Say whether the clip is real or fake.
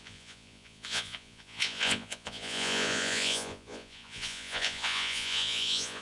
fake